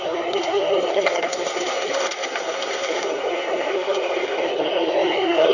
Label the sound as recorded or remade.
remade